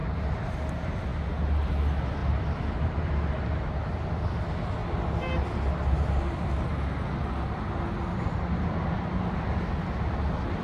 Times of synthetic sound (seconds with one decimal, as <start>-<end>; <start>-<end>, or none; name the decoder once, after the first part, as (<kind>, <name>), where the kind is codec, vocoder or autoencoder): none